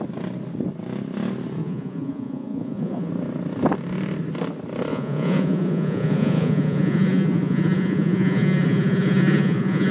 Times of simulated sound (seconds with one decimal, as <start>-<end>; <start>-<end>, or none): 1.6-3.1; 4.9-9.9